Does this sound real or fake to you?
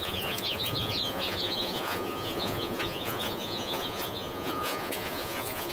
fake